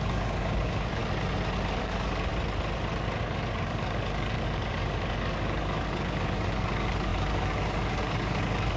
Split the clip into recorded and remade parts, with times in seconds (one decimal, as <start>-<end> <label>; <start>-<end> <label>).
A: 0.0-1.0 remade; 1.0-1.8 recorded; 1.8-2.3 remade; 2.3-3.2 recorded; 3.2-8.8 remade